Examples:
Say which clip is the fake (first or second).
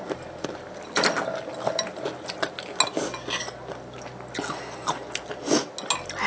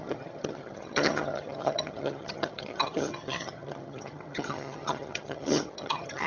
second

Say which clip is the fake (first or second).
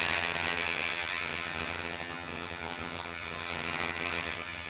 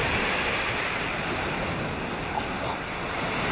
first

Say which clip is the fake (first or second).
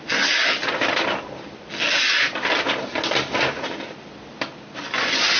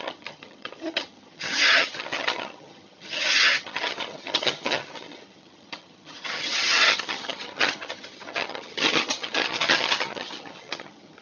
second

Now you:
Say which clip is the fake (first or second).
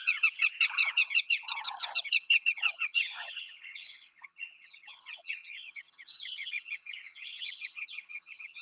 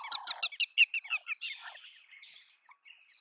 first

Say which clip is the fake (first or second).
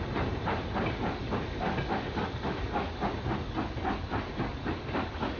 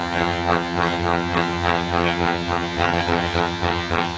second